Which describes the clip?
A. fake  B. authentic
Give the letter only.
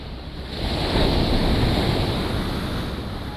B